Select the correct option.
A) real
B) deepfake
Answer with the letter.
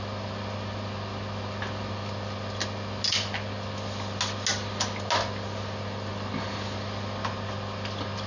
A